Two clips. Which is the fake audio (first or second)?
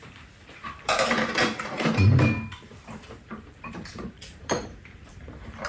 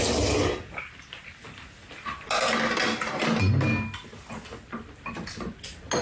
first